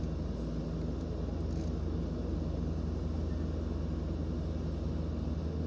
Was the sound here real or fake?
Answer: real